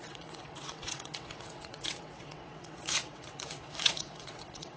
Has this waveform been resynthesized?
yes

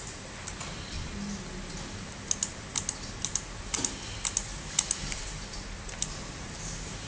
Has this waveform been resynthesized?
no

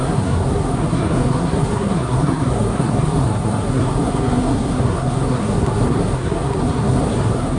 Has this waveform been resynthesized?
yes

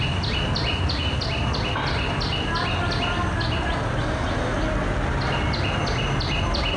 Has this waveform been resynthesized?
no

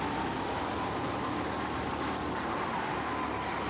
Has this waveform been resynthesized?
no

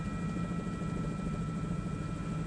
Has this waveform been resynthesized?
no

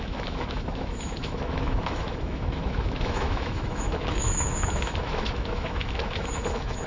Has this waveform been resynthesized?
yes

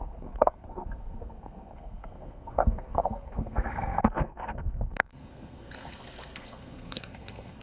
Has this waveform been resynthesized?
yes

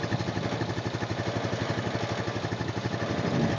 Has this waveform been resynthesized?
no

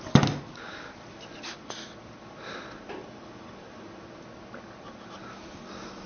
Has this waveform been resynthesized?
no